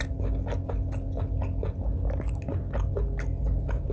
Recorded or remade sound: recorded